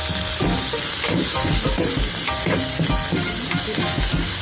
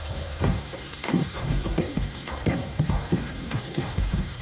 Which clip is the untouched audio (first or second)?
first